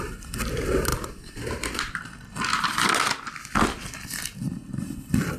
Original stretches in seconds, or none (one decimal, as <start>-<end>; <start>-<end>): 0.0-0.9; 2.0-5.4